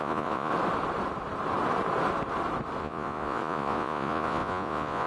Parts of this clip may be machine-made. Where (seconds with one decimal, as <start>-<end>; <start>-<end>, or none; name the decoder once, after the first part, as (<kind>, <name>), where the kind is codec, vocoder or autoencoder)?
0.0-0.5 (vocoder, Vocos); 2.8-5.1